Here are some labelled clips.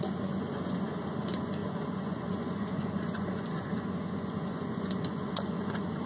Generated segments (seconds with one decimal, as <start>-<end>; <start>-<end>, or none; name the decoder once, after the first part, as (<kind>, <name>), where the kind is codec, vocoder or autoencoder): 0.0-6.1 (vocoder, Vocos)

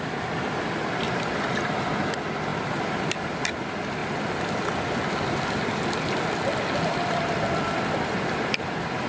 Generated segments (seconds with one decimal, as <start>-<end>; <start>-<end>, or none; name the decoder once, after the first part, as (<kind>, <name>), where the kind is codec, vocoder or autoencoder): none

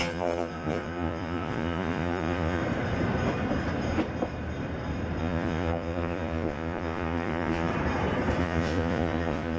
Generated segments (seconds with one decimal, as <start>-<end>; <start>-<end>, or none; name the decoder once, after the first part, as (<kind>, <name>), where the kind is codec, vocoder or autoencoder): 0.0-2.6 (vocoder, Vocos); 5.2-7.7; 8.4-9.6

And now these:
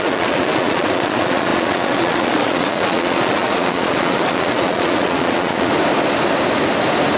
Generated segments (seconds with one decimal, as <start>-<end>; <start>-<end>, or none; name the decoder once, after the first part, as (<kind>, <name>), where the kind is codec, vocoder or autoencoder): 0.0-5.7 (vocoder, Vocos)